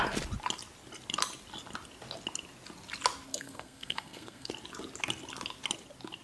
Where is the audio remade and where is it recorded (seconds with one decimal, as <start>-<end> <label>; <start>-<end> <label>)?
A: 0.0-3.3 recorded; 3.3-4.5 remade; 4.5-6.2 recorded